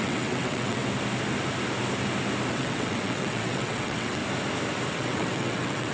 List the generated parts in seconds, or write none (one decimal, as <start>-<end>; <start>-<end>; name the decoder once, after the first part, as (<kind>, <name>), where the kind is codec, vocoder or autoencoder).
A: 0.0-0.8 (vocoder, WaveNeXt); 2.5-4.2; 4.9-5.9